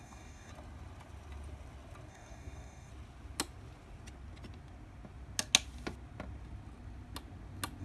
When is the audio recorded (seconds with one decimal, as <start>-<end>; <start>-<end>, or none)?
0.5-2.1; 2.9-7.8